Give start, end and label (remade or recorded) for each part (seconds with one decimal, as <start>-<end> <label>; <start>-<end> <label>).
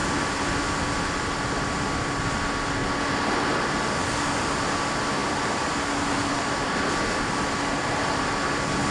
0.0-4.0 recorded; 4.0-4.7 remade; 4.7-5.2 recorded; 5.2-7.4 remade; 7.4-8.9 recorded